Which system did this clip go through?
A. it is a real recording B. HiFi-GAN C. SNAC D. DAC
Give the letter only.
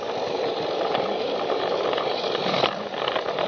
A